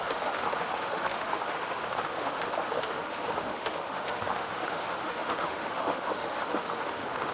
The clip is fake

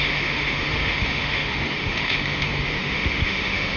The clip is fake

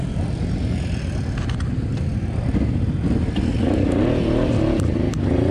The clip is real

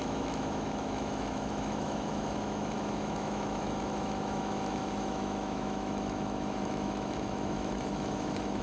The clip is fake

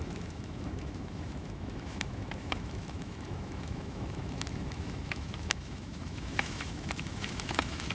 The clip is fake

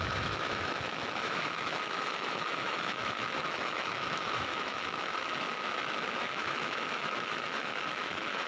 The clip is fake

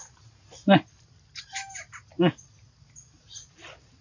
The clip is real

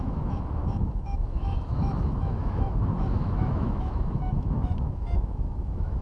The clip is fake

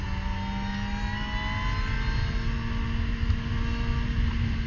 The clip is real